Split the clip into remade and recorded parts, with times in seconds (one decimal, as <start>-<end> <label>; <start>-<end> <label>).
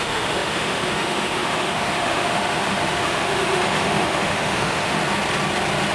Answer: 0.0-5.0 remade; 5.0-5.9 recorded